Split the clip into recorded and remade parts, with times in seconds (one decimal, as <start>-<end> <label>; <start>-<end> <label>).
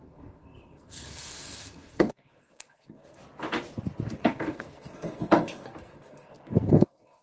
0.0-3.2 remade; 3.2-4.2 recorded; 4.2-7.2 remade